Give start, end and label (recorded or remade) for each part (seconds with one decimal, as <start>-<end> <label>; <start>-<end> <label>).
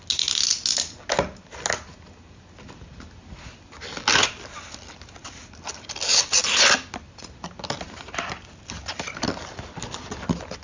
0.0-10.6 recorded